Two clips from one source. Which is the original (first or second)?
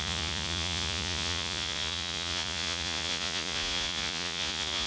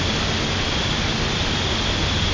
second